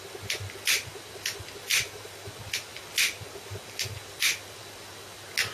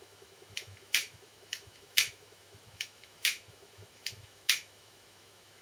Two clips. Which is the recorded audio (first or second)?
first